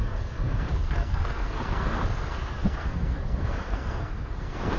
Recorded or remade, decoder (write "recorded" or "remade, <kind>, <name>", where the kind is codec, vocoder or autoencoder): remade, codec, SNAC